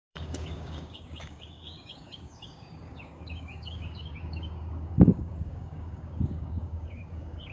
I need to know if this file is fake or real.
fake